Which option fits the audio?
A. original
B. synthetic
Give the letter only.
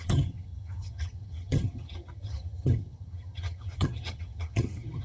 B